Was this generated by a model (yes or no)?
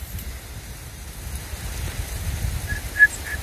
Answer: no